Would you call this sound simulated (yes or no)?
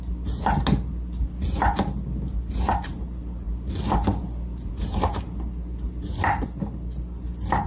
no